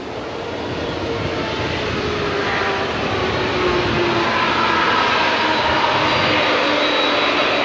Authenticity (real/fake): real